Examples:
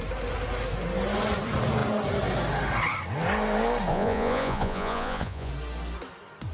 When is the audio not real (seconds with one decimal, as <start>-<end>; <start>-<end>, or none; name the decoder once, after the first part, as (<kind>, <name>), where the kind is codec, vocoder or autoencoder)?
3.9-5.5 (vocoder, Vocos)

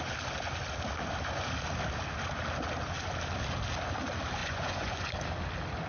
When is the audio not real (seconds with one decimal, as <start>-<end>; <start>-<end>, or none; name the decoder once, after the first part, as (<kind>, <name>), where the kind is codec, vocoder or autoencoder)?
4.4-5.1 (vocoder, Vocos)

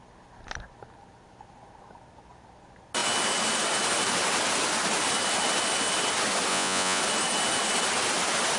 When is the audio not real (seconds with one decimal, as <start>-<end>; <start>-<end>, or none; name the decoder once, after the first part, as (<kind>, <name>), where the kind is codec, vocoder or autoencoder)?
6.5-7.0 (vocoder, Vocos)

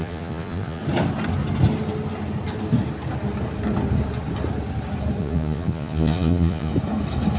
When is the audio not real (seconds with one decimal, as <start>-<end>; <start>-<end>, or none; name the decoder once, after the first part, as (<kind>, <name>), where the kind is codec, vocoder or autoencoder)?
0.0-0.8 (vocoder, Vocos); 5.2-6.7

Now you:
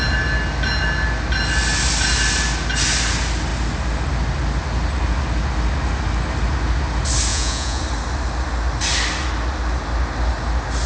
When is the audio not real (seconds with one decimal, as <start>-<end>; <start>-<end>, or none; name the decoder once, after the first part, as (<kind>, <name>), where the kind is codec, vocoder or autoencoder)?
7.3-7.8 (vocoder, Vocos)

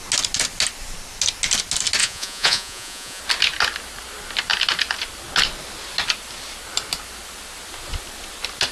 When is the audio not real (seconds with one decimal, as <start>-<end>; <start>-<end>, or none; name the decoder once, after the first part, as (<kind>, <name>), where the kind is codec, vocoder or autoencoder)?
2.0-3.2 (vocoder, Vocos)